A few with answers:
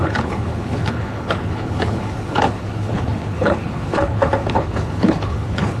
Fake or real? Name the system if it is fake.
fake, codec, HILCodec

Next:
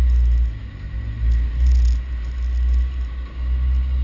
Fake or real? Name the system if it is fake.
real